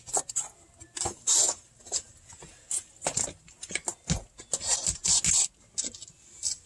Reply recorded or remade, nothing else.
recorded